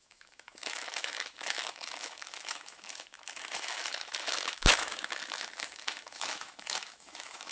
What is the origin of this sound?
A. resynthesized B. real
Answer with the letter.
A